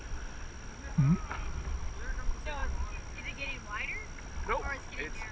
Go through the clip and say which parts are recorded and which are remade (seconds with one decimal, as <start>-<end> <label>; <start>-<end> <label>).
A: 0.0-5.3 recorded